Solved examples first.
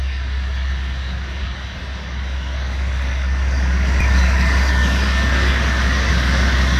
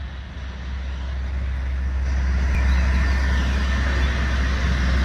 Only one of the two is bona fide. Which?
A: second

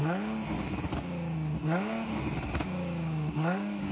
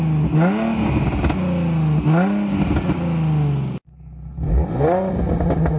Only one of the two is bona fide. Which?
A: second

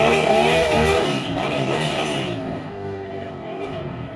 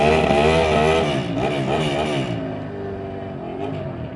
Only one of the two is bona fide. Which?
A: second